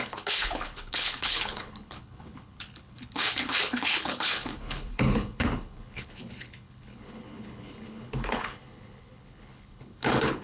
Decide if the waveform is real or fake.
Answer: fake